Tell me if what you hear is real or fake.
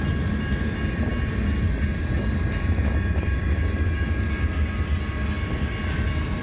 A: real